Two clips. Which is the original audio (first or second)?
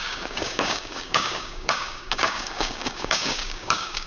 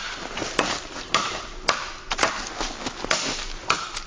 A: second